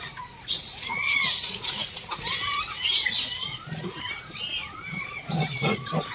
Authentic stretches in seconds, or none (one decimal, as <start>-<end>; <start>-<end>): none